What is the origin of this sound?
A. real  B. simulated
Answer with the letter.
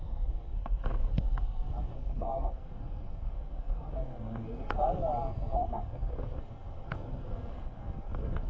B